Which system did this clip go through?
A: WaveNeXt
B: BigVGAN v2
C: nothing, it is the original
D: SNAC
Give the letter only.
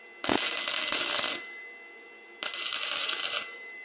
C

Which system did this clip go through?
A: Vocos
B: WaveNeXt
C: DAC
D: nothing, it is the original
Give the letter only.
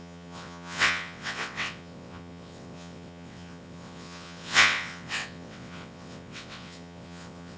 B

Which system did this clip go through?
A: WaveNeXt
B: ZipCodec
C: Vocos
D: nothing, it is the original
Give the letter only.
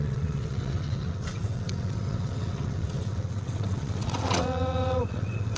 A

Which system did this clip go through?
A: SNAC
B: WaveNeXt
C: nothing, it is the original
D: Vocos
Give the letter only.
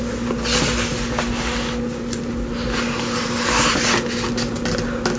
C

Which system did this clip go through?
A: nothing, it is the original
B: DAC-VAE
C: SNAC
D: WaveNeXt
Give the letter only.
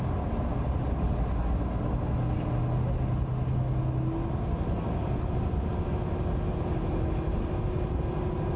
A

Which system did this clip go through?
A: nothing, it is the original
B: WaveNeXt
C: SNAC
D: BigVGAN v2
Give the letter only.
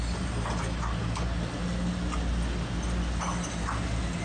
A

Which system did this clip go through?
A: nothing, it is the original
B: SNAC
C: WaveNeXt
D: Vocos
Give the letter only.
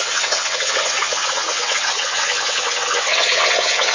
C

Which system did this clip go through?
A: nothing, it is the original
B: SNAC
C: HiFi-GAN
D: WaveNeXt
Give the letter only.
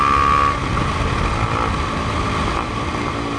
A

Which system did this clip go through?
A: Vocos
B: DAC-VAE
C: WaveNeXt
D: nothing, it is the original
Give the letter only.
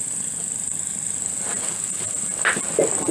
D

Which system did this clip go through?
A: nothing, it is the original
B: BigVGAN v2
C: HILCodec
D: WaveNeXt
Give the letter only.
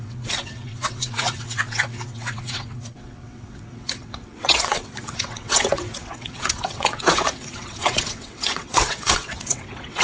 D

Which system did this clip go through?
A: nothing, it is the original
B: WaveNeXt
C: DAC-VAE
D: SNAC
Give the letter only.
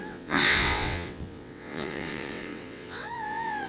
B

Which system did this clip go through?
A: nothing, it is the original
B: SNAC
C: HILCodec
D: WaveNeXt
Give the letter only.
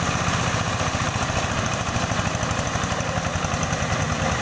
A